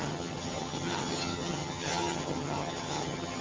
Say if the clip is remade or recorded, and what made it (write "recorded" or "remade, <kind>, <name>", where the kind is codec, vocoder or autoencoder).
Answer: remade, vocoder, HiFi-GAN